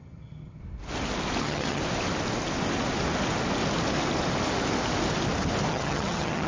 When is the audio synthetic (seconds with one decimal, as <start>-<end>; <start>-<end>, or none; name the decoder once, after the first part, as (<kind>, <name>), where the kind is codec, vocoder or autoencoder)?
0.0-0.6 (vocoder, HiFi-GAN); 1.4-1.8; 5.7-6.5